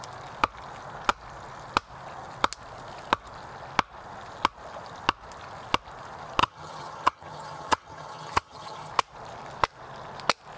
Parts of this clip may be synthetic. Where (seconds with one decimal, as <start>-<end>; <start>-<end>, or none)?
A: 6.4-8.9